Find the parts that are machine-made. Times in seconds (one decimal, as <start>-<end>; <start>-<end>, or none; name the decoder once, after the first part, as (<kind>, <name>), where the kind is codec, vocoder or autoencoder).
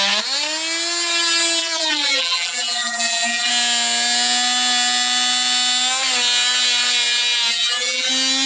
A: 1.6-3.5 (vocoder, BigVGAN v2); 7.5-8.1